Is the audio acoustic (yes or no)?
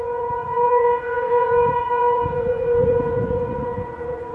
no